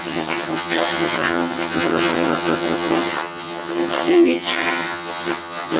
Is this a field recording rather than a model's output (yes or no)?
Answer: no